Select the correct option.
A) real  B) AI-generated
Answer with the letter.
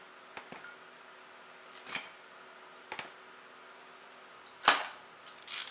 A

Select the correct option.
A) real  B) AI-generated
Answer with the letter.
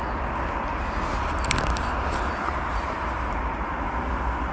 A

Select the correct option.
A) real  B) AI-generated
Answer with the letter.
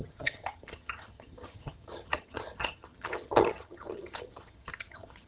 B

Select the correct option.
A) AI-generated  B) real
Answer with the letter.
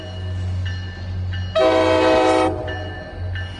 B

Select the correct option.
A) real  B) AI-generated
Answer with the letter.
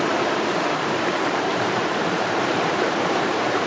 B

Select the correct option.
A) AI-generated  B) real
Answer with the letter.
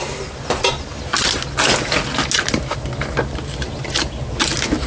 B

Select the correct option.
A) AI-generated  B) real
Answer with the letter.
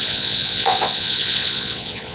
A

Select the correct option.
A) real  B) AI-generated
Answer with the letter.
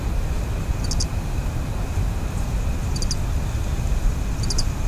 A